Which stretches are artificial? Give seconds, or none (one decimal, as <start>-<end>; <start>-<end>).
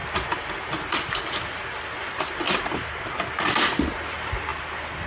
none